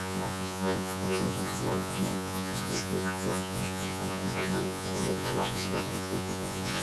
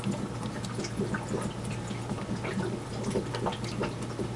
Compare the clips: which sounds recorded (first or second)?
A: second